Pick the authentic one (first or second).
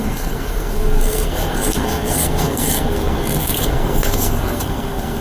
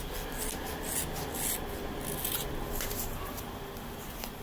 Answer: second